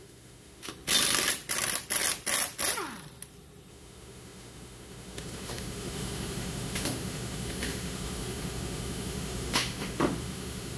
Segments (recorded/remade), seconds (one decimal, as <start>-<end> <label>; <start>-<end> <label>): 0.0-0.7 remade; 0.7-3.7 recorded; 3.7-10.8 remade